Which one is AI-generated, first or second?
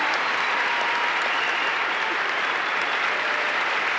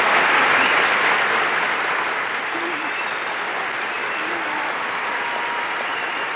first